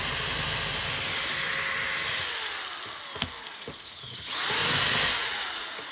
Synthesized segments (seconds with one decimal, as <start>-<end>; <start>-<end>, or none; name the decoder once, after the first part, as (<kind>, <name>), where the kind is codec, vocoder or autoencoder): 3.5-4.6 (vocoder, Vocos); 5.2-5.9